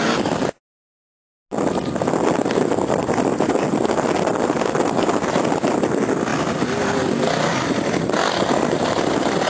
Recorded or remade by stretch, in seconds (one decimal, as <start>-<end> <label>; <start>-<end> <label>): 0.0-9.5 recorded

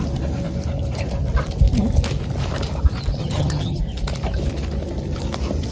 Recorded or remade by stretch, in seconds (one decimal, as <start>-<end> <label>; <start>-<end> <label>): 0.0-3.2 recorded; 3.2-3.8 remade; 3.8-5.7 recorded